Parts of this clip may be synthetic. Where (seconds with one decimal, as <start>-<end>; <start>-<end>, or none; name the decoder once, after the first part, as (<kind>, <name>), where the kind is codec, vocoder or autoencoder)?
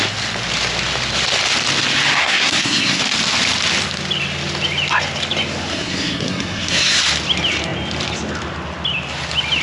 2.2-3.0 (codec, SNAC); 5.7-7.0